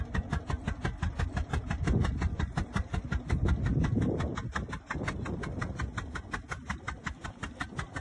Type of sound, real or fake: real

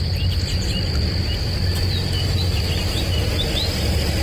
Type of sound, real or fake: real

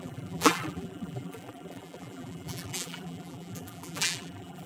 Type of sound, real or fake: fake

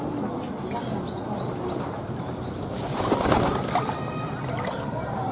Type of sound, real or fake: real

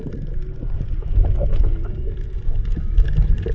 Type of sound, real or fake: fake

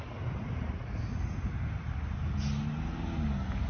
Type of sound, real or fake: real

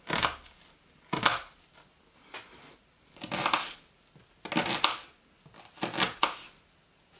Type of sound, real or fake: real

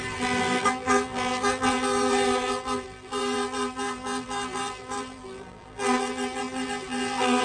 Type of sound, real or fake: fake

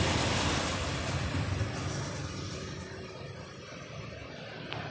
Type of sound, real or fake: real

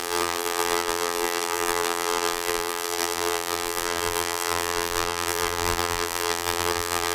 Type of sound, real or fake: fake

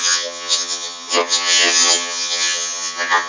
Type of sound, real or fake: fake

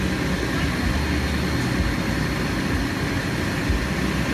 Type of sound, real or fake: real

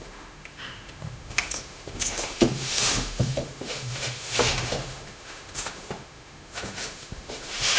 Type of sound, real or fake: fake